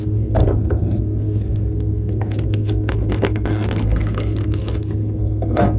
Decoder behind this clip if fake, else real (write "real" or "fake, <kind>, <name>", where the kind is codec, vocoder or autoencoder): fake, codec, SNAC